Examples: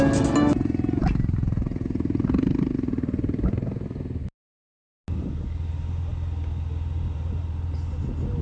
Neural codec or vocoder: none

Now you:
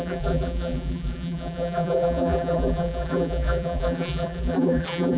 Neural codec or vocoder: vocoder, BigVGAN v2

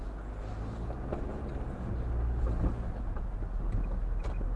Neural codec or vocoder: none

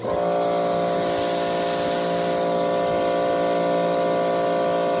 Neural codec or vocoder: none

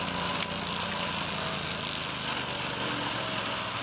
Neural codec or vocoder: none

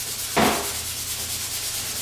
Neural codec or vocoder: none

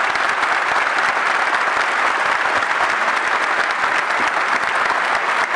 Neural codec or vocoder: none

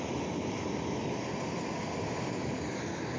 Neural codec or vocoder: vocoder, BigVGAN v2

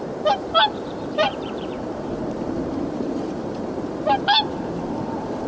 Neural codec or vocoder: vocoder, BigVGAN v2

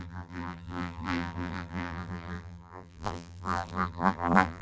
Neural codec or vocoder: vocoder, BigVGAN v2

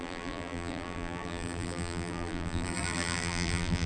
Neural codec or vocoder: vocoder, BigVGAN v2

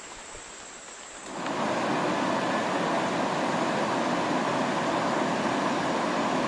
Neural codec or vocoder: none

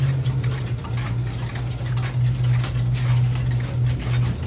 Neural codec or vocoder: none